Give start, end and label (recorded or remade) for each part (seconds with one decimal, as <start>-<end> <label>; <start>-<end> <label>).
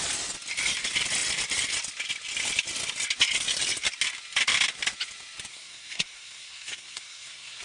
0.0-5.5 recorded; 5.5-7.6 remade